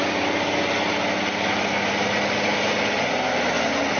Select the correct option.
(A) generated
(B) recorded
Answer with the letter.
B